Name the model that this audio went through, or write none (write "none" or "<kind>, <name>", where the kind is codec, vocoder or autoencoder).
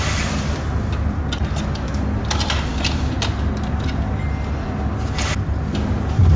none